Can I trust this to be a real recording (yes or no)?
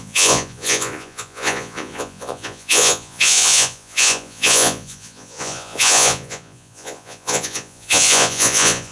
no